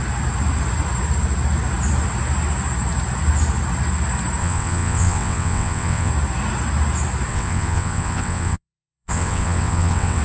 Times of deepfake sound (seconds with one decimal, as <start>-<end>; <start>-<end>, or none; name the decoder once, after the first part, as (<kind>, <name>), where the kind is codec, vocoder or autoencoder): 4.4-6.1 (vocoder, WaveNeXt); 7.3-10.2